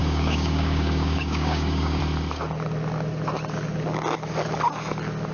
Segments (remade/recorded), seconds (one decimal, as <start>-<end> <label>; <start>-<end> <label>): 0.0-2.0 remade; 2.0-5.3 recorded